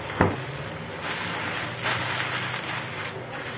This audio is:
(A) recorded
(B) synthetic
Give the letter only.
A